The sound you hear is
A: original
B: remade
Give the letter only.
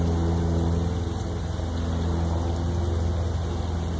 A